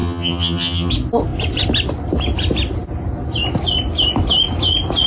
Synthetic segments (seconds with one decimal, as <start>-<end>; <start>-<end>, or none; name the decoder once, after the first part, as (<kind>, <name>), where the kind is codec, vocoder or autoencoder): 0.0-0.9 (vocoder, HiFi-GAN)